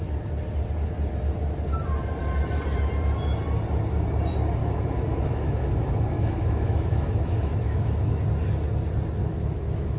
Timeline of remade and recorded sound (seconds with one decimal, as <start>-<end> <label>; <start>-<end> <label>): 0.0-4.6 recorded; 4.6-8.2 remade; 8.2-9.2 recorded; 9.2-10.0 remade